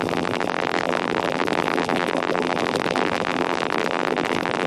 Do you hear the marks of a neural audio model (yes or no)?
yes